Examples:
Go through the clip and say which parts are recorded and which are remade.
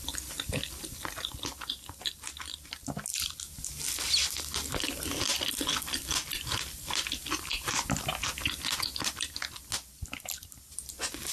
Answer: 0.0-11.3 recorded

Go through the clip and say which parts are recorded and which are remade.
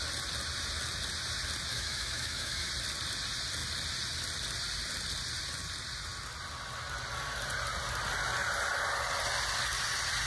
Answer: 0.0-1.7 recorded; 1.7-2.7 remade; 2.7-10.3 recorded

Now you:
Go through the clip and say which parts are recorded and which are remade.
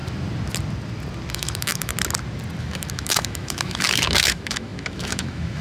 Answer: 0.0-1.3 recorded; 1.3-1.9 remade; 1.9-2.6 recorded; 2.6-5.6 remade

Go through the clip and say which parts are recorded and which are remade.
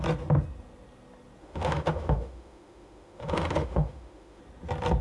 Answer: 0.0-1.4 recorded; 1.4-4.4 remade; 4.4-5.0 recorded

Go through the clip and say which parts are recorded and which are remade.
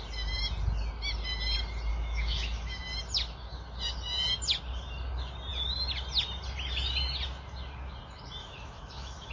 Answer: 0.0-1.9 recorded; 1.9-2.8 remade; 2.8-8.4 recorded; 8.4-9.3 remade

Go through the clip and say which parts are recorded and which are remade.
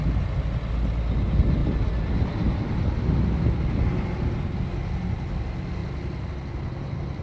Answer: 0.0-7.2 recorded